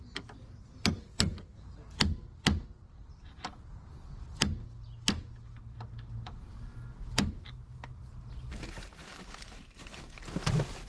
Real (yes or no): yes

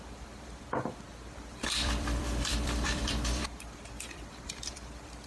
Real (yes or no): no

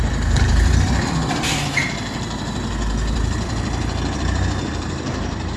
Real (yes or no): no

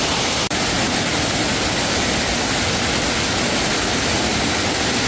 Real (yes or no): yes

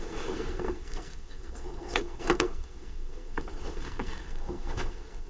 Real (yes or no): no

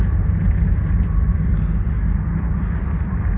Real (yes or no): yes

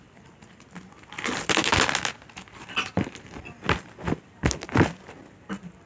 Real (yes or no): yes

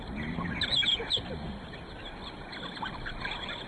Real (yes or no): yes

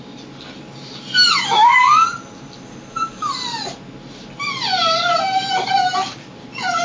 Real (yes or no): yes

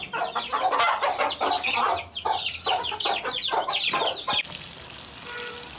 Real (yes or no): yes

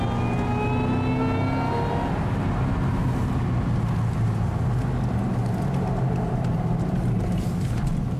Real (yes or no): yes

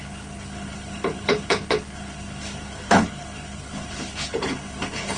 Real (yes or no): no